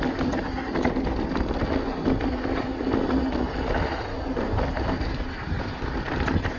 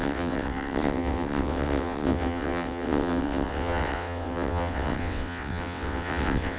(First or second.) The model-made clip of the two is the second